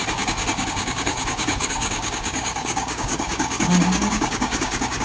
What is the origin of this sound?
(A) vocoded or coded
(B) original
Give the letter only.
A